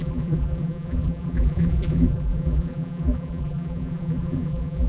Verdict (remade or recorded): remade